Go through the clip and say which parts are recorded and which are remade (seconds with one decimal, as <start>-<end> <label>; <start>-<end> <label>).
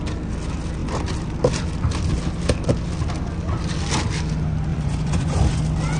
0.0-4.7 recorded; 4.7-5.6 remade; 5.6-6.0 recorded